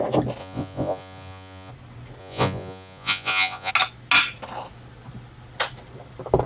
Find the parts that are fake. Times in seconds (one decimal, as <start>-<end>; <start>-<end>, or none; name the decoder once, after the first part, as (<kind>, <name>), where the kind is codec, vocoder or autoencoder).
0.4-1.7 (vocoder, Vocos); 2.2-3.7